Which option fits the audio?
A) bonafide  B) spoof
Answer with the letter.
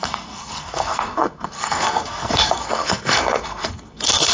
B